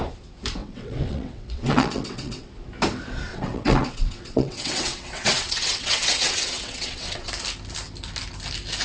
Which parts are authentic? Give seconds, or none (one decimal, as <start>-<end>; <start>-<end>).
0.0-0.6; 2.5-3.3; 7.3-8.8